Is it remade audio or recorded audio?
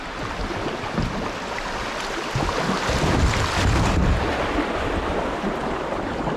recorded